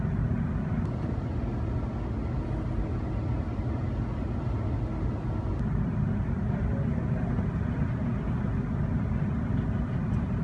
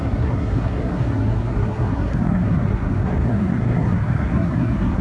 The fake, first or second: second